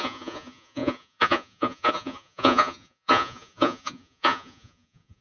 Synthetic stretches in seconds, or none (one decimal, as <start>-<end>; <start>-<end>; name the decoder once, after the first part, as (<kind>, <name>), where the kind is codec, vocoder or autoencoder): 0.0-5.2 (vocoder, Vocos)

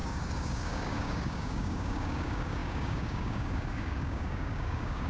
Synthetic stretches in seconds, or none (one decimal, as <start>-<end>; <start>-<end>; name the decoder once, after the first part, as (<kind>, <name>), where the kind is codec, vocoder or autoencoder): 0.0-5.1 (codec, DAC)

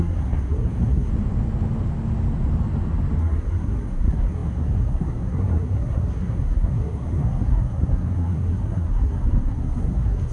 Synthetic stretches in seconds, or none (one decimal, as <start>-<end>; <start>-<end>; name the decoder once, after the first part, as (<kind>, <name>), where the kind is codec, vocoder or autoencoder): 0.0-1.1 (codec, SNAC); 3.2-10.3

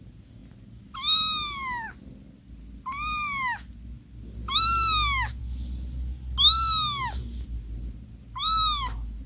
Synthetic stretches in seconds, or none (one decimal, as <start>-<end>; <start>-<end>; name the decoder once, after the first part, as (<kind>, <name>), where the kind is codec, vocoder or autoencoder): none

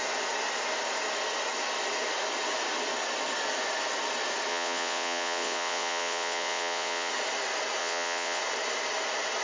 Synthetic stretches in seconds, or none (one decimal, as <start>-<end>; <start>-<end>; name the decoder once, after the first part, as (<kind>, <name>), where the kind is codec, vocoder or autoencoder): 4.5-7.1 (vocoder, WaveNeXt); 7.8-8.4